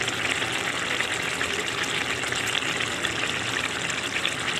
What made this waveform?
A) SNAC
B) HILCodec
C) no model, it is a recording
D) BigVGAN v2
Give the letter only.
C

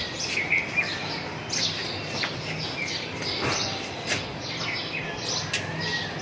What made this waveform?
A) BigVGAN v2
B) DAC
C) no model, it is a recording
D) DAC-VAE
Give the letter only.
C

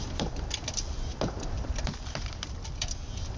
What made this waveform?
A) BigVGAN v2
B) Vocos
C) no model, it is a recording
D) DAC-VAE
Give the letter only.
A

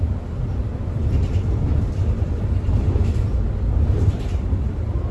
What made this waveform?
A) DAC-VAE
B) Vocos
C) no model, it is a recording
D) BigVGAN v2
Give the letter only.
D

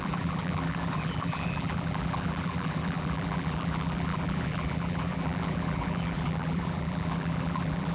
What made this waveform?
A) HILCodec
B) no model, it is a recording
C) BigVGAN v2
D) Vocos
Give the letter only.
C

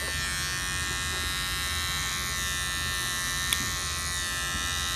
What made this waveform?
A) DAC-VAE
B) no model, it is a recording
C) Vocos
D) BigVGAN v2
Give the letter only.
B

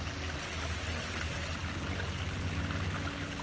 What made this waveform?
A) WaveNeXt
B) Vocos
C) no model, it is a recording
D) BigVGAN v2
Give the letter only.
C